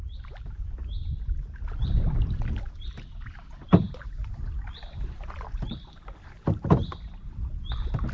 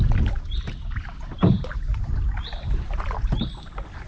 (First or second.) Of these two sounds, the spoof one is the first